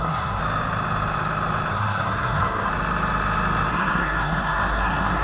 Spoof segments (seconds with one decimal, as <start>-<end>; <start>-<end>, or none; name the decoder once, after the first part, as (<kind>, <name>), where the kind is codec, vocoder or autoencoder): 0.0-0.4 (codec, SNAC); 1.7-2.7; 3.7-5.2